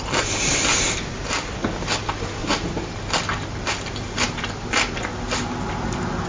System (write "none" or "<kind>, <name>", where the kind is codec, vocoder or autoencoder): none